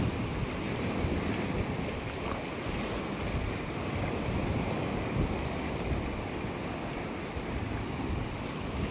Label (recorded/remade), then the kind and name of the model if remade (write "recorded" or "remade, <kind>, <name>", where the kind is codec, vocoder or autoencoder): recorded